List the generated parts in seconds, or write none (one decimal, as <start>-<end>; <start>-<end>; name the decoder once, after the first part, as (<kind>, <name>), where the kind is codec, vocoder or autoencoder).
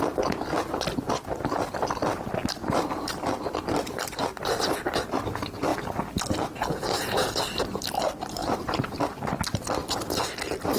2.4-4.8 (vocoder, BigVGAN v2); 8.4-9.0